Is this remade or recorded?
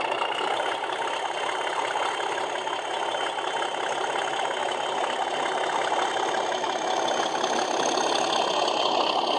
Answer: recorded